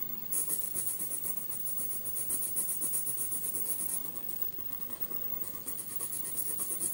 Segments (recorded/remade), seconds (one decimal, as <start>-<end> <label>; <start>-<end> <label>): 0.0-1.6 remade; 1.6-3.5 recorded; 3.5-6.9 remade